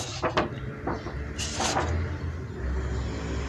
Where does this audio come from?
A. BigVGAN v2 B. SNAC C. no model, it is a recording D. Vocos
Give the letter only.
C